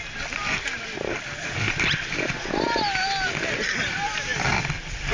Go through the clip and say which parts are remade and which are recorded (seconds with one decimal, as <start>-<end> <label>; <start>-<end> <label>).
0.0-5.1 recorded